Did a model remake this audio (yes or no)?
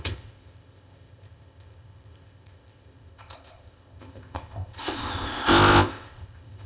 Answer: yes